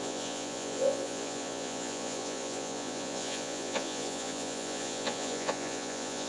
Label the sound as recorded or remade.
remade